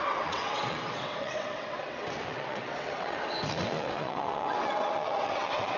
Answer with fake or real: fake